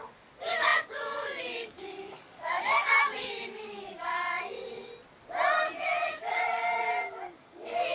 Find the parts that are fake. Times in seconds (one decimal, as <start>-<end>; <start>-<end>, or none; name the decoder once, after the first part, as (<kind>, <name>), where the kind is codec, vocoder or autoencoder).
0.0-4.9 (codec, DAC); 5.6-7.9